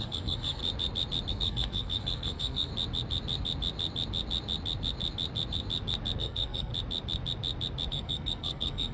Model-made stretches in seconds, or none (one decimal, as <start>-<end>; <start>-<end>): 0.0-0.6; 1.3-2.7; 6.2-6.7; 7.9-8.9